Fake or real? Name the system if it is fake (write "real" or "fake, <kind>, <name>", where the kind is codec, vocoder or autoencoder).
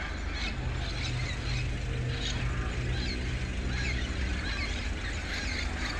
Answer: real